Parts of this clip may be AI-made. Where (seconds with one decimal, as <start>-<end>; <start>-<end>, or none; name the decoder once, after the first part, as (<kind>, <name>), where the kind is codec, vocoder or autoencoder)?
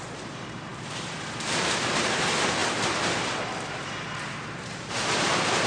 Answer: 0.0-2.6 (vocoder, BigVGAN v2); 3.7-5.7